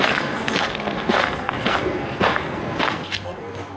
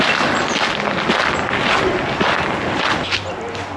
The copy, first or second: first